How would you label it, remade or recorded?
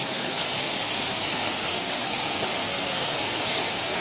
remade